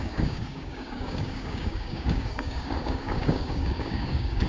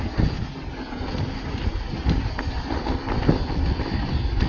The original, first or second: second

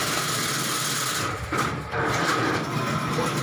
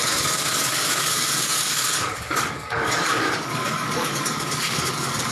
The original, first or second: first